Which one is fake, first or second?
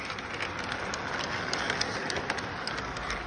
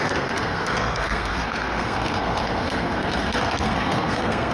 second